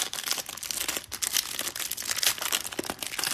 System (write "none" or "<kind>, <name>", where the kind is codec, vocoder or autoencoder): none